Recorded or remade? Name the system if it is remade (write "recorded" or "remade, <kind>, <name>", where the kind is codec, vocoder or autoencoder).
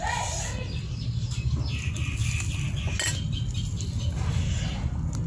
recorded